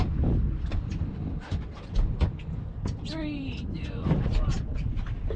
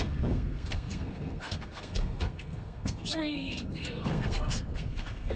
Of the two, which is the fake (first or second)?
second